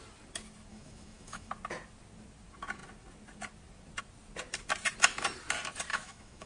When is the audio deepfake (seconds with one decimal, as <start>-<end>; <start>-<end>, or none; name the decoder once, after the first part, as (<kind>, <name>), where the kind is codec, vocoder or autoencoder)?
0.7-1.5 (autoencoder, DAC-VAE); 5.9-6.5